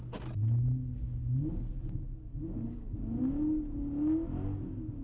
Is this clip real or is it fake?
real